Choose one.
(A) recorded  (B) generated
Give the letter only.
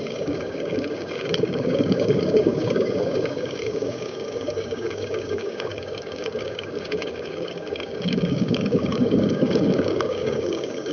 B